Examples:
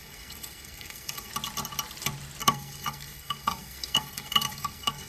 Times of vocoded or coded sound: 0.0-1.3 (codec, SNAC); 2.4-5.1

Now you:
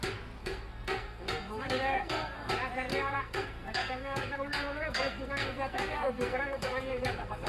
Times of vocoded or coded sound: 0.4-2.5 (codec, SNAC); 2.9-7.5

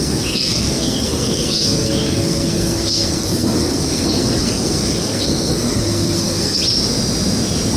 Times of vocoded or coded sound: 0.0-6.6 (codec, SNAC)